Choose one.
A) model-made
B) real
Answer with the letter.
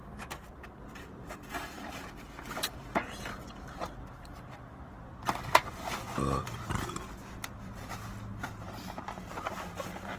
A